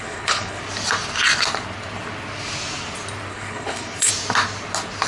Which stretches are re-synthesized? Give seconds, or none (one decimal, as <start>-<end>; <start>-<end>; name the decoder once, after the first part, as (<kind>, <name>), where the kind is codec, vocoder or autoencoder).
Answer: 0.0-0.6 (codec, HILCodec); 3.3-4.1